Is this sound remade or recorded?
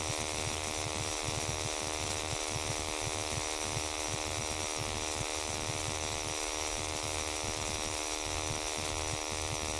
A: recorded